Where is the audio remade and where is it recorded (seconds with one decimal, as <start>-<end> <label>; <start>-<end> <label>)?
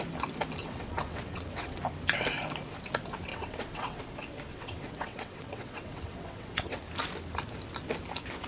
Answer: 0.0-0.6 recorded; 0.6-1.8 remade; 1.8-3.3 recorded; 3.3-4.0 remade; 4.0-4.5 recorded; 4.5-6.8 remade; 6.8-8.5 recorded